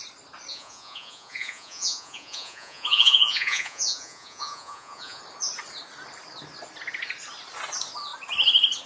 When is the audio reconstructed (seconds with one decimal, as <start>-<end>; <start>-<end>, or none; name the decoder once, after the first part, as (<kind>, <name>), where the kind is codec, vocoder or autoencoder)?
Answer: 0.5-5.2 (vocoder, Vocos)

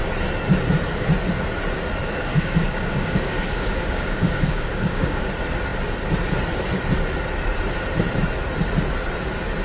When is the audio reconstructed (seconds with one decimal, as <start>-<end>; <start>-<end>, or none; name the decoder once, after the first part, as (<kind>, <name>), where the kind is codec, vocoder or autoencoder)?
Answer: 2.0-5.3 (codec, DAC)

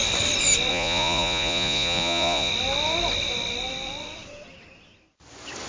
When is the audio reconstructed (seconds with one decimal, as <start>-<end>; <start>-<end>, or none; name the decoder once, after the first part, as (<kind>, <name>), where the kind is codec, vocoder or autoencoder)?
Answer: 0.7-2.5 (vocoder, Vocos)

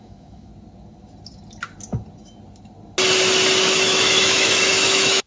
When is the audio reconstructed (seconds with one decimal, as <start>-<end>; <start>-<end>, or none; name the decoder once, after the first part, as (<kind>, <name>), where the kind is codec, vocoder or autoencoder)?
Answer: 0.0-0.5 (autoencoder, DAC-VAE); 3.6-5.3

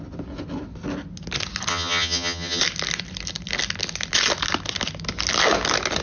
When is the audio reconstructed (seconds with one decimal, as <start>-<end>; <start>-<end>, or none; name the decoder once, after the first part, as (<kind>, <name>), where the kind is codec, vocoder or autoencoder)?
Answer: 1.7-2.6 (vocoder, HiFi-GAN)

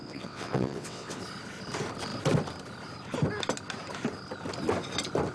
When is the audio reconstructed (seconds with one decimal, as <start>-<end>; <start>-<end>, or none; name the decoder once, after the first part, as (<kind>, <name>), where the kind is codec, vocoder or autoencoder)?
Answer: 0.0-1.2 (vocoder, WaveNeXt)